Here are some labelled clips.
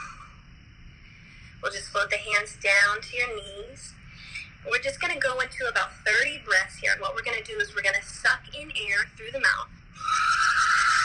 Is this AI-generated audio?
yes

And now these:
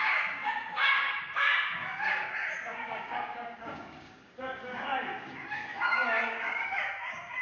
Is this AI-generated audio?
yes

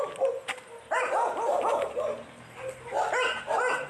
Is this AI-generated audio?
no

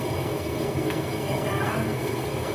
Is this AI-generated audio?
yes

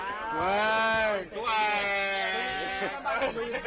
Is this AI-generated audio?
no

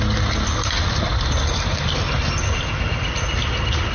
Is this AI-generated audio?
no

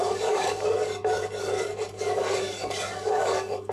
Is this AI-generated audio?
yes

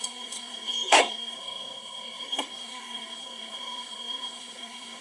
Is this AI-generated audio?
yes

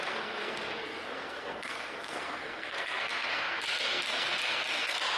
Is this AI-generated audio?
yes